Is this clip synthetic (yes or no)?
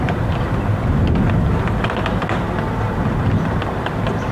no